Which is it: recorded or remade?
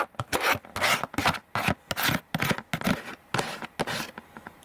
recorded